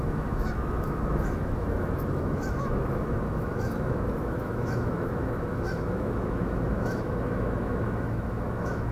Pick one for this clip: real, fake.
fake